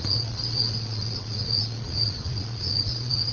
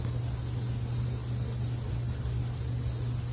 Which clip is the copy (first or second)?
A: first